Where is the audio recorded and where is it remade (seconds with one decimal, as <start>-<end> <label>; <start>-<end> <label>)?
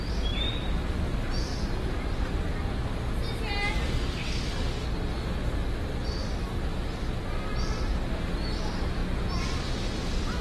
0.0-1.5 remade; 1.5-6.3 recorded; 6.3-6.7 remade; 6.7-8.1 recorded; 8.1-10.4 remade